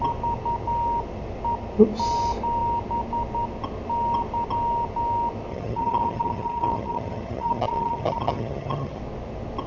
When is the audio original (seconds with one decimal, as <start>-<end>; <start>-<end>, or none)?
0.0-5.5; 9.0-9.7